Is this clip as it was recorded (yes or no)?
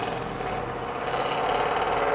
yes